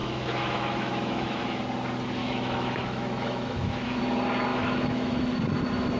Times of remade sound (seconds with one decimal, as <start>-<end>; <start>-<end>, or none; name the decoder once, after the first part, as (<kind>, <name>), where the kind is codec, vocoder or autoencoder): 0.0-1.6 (autoencoder, DAC-VAE); 2.2-4.0; 4.5-5.3